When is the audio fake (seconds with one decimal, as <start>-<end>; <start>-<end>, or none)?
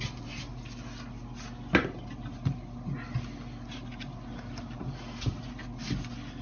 none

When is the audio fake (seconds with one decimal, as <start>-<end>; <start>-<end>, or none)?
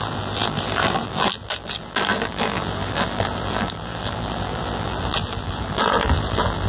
0.0-6.7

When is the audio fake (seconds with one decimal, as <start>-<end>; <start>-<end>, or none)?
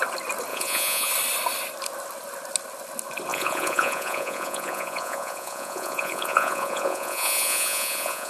0.5-1.1; 3.3-8.3